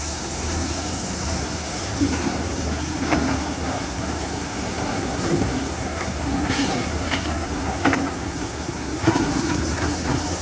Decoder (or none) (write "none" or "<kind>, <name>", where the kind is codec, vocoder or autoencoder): codec, SNAC